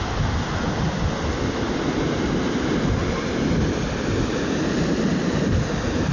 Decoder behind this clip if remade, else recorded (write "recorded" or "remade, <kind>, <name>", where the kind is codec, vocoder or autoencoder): recorded